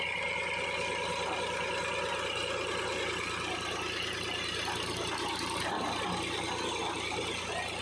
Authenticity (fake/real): real